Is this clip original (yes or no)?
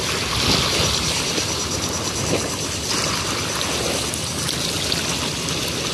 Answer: yes